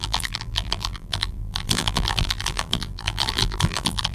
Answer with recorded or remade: remade